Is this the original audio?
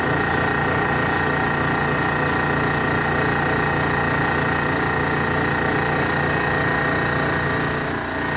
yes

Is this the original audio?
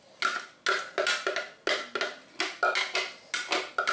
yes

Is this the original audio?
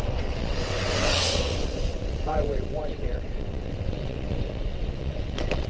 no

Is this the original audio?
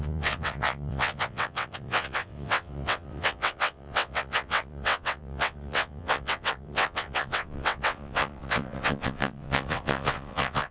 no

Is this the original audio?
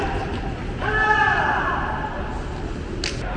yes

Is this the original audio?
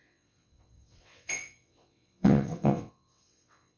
no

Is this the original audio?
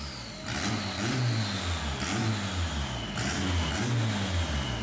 yes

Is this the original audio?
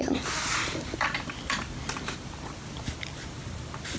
yes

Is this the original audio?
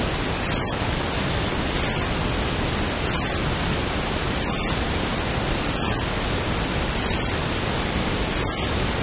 yes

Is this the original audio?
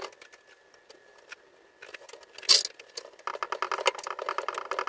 yes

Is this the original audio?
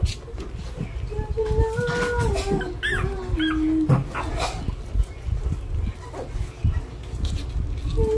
yes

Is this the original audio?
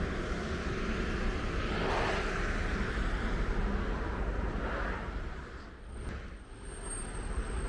yes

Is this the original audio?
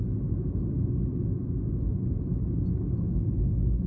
yes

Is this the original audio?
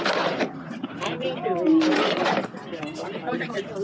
yes